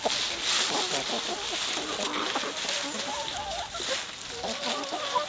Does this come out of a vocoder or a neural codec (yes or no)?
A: no